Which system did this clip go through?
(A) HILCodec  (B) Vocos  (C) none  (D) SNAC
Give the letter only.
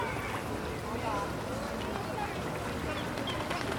C